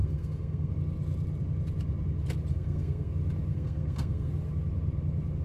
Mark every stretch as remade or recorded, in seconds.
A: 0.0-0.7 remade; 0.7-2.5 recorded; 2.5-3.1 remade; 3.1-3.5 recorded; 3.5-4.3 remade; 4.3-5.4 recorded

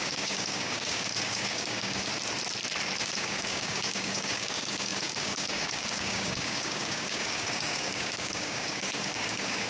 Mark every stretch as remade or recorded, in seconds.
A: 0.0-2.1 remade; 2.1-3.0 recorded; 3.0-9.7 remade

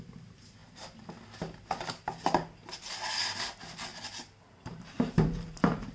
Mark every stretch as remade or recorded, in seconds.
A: 0.0-3.9 recorded; 3.9-5.9 remade

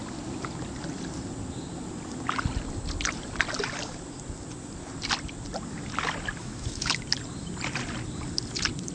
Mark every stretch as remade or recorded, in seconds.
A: 0.0-6.4 recorded; 6.4-7.0 remade; 7.0-8.9 recorded

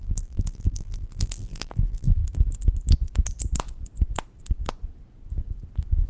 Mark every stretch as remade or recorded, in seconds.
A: 0.0-2.2 remade; 2.2-6.1 recorded